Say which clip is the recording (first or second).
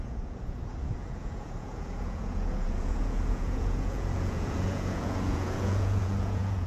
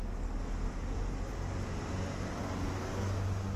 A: second